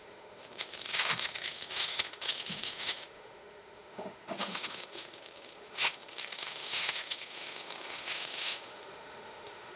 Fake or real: fake